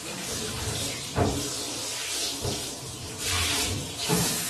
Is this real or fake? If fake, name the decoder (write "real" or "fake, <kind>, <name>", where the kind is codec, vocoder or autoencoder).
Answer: fake, vocoder, BigVGAN v2